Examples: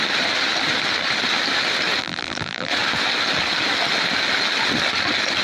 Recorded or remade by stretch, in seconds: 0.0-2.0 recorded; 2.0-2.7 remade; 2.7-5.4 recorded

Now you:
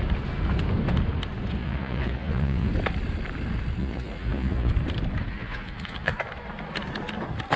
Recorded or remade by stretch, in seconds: 0.0-1.6 recorded; 1.6-2.7 remade; 2.7-3.8 recorded; 3.8-4.7 remade; 4.7-5.3 recorded; 5.3-6.1 remade; 6.1-7.6 recorded

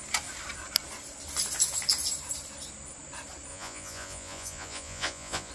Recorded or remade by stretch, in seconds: 0.0-3.5 recorded; 3.5-5.5 remade

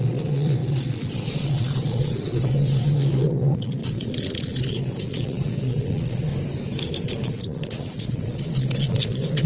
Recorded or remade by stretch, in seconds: 0.0-6.3 remade; 6.3-7.0 recorded; 7.0-9.5 remade

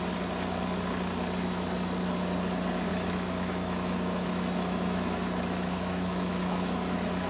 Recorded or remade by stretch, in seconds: 0.0-2.9 recorded; 2.9-7.3 remade

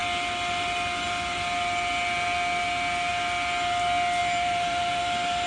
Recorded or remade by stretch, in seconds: 0.0-4.2 recorded; 4.2-5.0 remade; 5.0-5.5 recorded

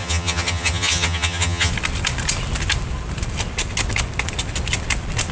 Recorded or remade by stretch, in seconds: 0.0-1.7 remade; 1.7-5.3 recorded

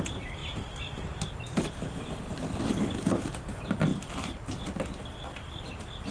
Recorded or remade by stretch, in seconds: 0.0-6.1 recorded